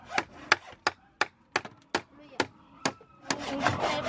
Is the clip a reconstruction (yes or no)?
no